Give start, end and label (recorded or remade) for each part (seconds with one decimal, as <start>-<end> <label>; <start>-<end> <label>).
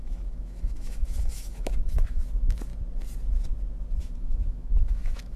0.0-2.7 remade; 2.7-4.0 recorded; 4.0-5.4 remade